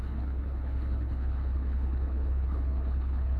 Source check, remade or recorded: remade